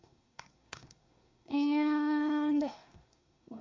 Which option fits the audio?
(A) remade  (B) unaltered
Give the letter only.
A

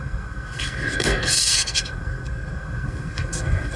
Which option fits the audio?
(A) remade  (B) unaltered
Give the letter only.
A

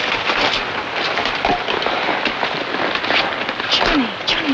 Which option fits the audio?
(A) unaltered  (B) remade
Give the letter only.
A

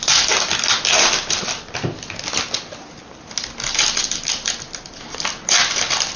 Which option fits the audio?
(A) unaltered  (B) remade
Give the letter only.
A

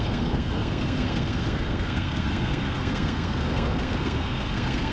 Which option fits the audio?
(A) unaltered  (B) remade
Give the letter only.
B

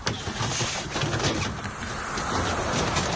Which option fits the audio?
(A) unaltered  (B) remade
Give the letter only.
A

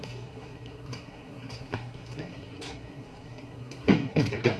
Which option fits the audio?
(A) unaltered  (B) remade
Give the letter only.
B